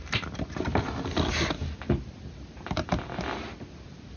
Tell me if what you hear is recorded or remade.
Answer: recorded